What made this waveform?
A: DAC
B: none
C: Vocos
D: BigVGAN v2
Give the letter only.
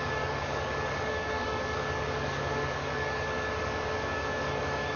A